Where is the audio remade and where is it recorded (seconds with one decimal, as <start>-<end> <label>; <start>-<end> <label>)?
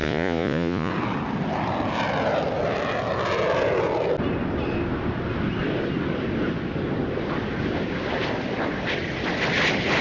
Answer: 0.0-0.9 remade; 0.9-10.0 recorded